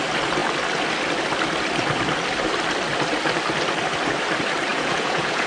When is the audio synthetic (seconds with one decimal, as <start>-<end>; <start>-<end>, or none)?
4.7-5.5